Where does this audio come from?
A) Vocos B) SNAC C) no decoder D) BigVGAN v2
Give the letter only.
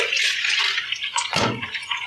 A